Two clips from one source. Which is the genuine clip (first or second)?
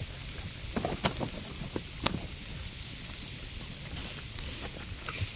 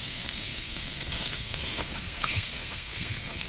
first